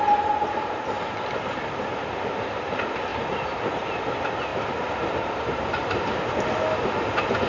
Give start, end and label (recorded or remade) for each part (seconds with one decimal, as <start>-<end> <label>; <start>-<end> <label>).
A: 0.0-3.1 recorded; 3.1-3.7 remade; 3.7-4.5 recorded; 4.5-6.3 remade; 6.3-7.5 recorded